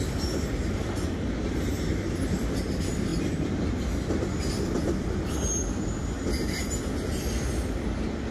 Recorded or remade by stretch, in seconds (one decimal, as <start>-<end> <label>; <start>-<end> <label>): 0.0-8.3 recorded